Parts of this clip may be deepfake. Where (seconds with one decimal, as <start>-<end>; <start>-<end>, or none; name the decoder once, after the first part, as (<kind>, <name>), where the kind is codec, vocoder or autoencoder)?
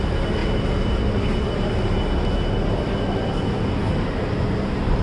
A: none